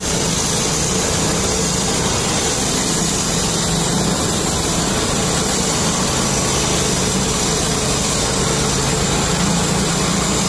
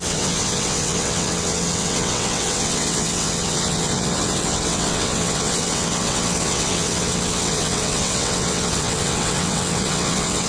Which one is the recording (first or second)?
first